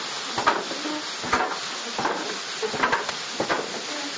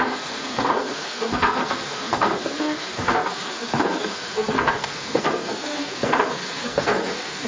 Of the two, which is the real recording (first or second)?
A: first